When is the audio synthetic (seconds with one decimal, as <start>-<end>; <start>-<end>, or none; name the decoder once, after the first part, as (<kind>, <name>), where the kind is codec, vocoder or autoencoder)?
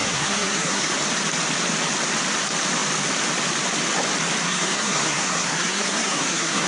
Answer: 0.0-0.9 (codec, SNAC); 4.4-6.7